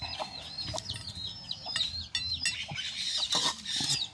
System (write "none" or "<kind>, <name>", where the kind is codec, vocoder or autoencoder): none